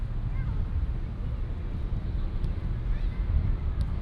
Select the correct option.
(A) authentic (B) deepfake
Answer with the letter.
A